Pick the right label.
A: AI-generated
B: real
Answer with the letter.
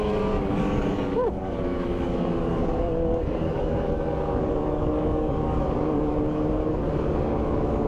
A